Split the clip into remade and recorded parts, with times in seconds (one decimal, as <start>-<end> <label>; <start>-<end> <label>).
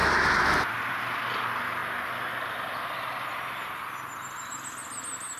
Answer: 0.0-0.9 remade; 0.9-5.4 recorded